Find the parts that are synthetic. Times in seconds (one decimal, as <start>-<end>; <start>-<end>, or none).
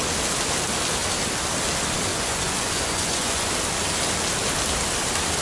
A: 2.1-3.5